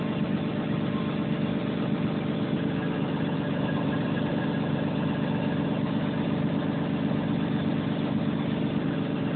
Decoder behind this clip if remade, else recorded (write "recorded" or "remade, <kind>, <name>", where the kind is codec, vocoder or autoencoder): recorded